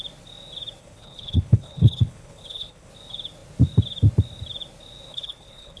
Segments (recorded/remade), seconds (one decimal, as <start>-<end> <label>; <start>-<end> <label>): 0.0-0.8 recorded; 0.8-2.9 remade; 2.9-5.1 recorded; 5.1-5.8 remade